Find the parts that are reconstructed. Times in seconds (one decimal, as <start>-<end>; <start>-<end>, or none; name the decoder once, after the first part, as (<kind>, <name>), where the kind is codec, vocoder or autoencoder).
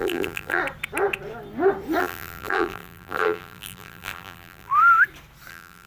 0.0-0.6 (vocoder, BigVGAN v2); 2.0-4.7; 5.5-5.9